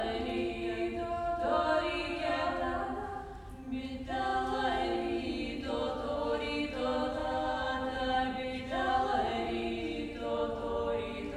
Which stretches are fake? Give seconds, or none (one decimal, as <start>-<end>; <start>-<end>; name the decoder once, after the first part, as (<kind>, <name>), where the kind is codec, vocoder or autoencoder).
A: 7.2-8.9 (autoencoder, DAC-VAE)